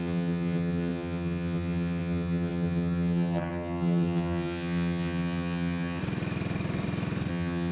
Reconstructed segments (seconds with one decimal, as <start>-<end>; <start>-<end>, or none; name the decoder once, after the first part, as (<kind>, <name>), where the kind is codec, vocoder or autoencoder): 0.0-6.0 (vocoder, HiFi-GAN); 7.3-7.7